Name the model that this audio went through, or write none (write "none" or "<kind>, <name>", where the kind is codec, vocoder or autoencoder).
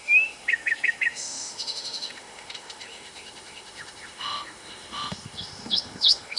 autoencoder, DAC-VAE